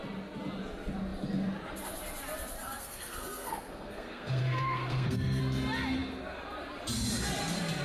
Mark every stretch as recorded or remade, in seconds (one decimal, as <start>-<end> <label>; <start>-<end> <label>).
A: 0.0-2.6 recorded; 2.6-5.4 remade; 5.4-7.8 recorded

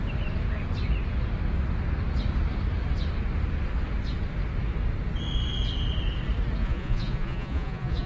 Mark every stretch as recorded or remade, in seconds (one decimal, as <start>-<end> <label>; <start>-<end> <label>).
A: 0.0-6.6 recorded; 6.6-8.1 remade

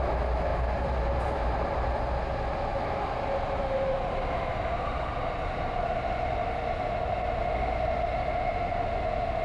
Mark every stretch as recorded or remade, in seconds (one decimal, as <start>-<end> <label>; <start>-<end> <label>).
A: 0.0-9.4 recorded

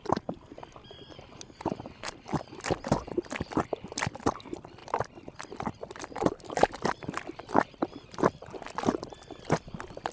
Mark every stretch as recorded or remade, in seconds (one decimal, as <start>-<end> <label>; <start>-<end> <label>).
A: 0.0-10.1 recorded

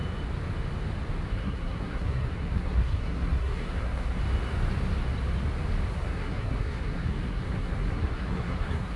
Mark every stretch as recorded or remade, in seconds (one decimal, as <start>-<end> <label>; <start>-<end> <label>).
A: 0.0-1.3 recorded; 1.3-4.2 remade; 4.2-5.9 recorded; 5.9-9.0 remade

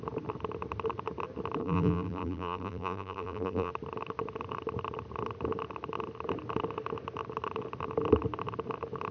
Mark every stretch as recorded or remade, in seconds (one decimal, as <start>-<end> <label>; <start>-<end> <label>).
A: 0.0-1.6 recorded; 1.6-3.7 remade; 3.7-9.1 recorded